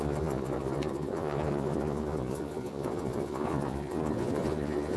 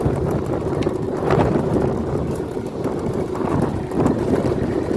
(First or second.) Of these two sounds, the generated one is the first